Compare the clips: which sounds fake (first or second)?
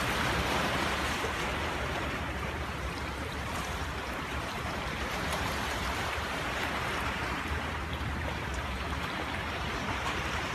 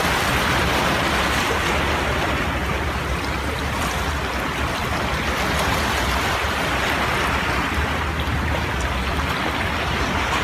first